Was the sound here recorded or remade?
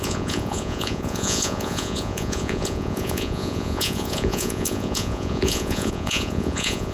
remade